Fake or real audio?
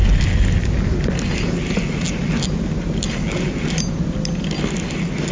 real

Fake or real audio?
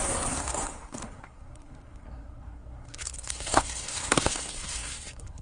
fake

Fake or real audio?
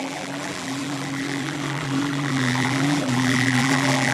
fake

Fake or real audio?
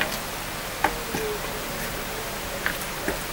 real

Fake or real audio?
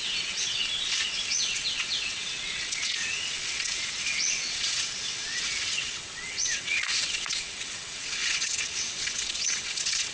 fake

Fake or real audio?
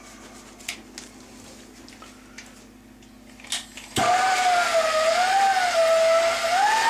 real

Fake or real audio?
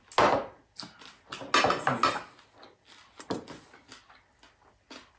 real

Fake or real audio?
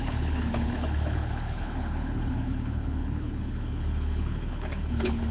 fake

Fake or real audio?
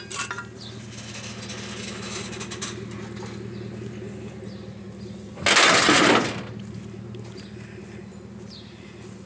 real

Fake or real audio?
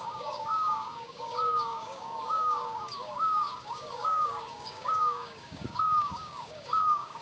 fake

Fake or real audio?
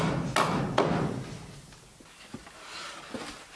real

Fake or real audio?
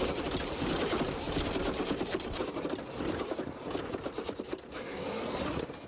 real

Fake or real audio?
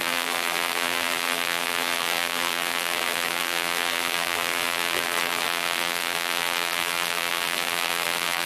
fake